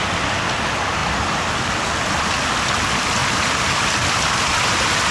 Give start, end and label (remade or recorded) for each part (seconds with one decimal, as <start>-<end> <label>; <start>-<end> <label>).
0.0-1.0 recorded; 1.0-1.8 remade; 1.8-3.2 recorded; 3.2-4.3 remade; 4.3-5.1 recorded